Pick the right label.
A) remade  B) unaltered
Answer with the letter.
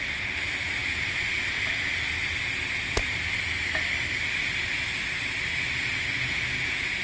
B